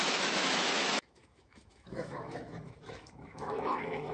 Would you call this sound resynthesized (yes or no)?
yes